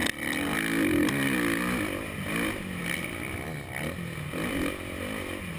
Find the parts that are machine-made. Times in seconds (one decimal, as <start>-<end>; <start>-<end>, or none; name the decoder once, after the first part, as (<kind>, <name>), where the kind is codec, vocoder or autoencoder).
none